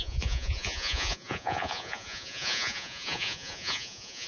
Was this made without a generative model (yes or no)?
no